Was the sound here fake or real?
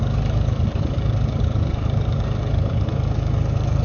fake